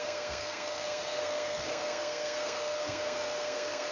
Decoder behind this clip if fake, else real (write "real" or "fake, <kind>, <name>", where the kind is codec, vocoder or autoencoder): fake, codec, SNAC